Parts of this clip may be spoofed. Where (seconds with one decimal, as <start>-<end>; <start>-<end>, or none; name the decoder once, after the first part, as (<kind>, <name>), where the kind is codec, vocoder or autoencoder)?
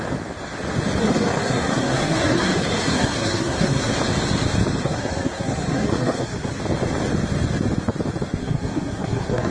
1.0-3.9 (codec, SNAC); 4.8-6.5; 8.4-9.5